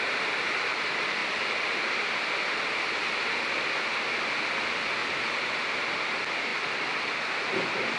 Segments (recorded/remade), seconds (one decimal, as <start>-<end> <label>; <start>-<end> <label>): 0.0-1.2 recorded; 1.2-1.8 remade; 1.8-6.5 recorded; 6.5-7.4 remade; 7.4-8.0 recorded